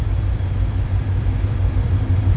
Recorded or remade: remade